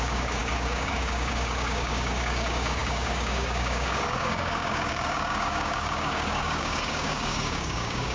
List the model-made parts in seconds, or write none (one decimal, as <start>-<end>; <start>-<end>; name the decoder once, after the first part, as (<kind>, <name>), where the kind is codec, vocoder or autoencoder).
0.0-8.1 (codec, DAC)